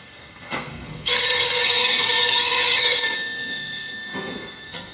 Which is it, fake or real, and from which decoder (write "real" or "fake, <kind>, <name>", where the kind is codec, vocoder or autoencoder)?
fake, codec, SNAC